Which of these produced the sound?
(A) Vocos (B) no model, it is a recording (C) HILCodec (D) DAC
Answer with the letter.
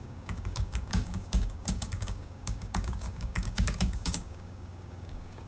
D